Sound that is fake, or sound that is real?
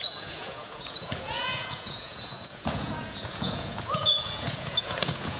fake